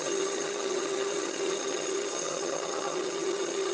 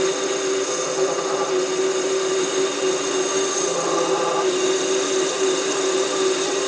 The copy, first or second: first